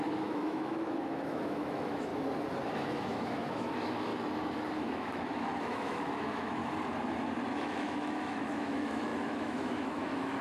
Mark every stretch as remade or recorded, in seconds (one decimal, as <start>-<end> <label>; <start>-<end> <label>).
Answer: 0.0-2.1 remade; 2.1-2.7 recorded; 2.7-4.1 remade; 4.1-4.8 recorded; 4.8-6.6 remade; 6.6-7.5 recorded; 7.5-10.4 remade